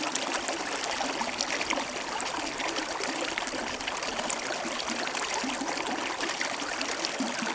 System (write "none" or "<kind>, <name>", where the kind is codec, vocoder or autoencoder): none